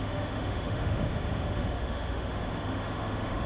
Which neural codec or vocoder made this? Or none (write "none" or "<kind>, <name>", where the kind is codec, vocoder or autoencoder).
autoencoder, DAC-VAE